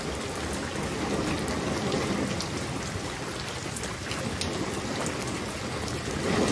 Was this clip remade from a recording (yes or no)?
no